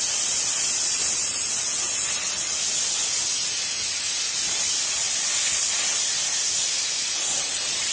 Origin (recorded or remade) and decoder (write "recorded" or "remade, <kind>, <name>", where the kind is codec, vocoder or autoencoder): recorded